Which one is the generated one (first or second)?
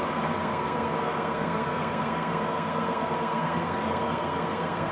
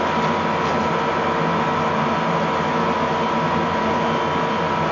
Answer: first